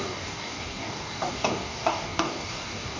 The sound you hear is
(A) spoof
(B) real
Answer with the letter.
A